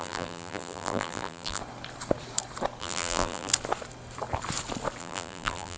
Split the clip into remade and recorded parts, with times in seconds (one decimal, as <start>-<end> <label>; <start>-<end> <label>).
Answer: 0.0-1.6 remade; 1.6-2.8 recorded; 2.8-3.5 remade; 3.5-5.0 recorded; 5.0-5.8 remade